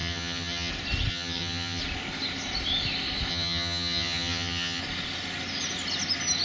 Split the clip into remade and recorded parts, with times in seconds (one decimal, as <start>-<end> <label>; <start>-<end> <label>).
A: 0.0-0.7 remade; 0.7-1.1 recorded; 1.1-1.8 remade; 1.8-3.3 recorded; 3.3-4.8 remade; 4.8-6.4 recorded